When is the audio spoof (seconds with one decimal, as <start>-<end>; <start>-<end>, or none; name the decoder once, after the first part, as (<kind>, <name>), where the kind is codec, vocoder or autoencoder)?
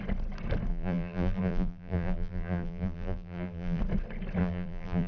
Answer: 0.7-3.8 (vocoder, BigVGAN v2); 4.4-5.1